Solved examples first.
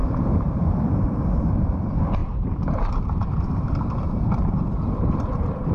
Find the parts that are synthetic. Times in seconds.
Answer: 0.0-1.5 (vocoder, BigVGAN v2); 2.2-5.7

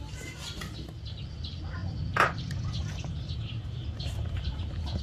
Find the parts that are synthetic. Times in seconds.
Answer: 1.8-5.0 (vocoder, BigVGAN v2)

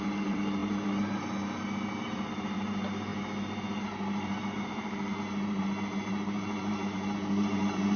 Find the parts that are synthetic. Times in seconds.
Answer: 0.0-8.0 (vocoder, BigVGAN v2)